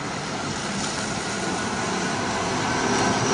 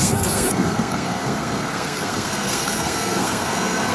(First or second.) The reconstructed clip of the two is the second